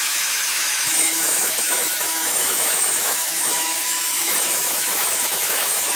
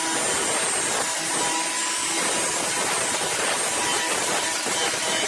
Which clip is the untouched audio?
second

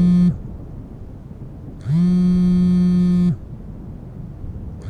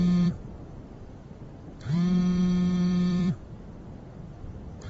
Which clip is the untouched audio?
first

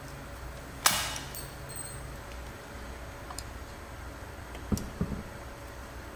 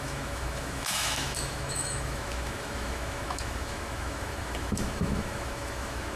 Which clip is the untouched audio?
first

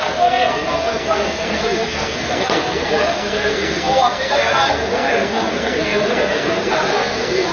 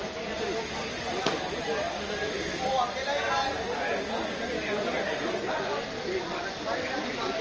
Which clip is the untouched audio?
second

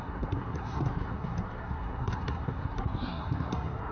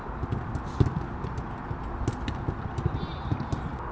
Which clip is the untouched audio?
second